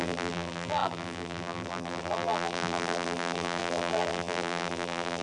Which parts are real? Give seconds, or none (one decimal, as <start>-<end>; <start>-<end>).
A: none